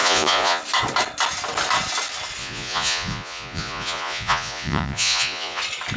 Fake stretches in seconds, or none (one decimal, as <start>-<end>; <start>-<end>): 0.0-0.6; 2.4-5.6